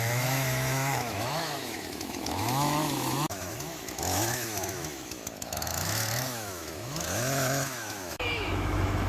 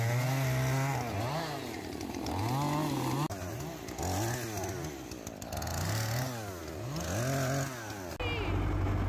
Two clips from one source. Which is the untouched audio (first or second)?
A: second